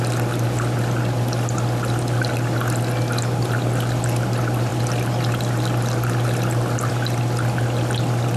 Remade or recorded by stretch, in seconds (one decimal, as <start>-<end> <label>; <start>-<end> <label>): 0.0-8.4 recorded